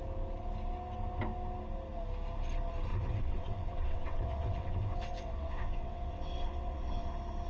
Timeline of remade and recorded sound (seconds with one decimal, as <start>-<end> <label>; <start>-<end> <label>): 0.0-2.9 recorded; 2.9-7.1 remade; 7.1-7.5 recorded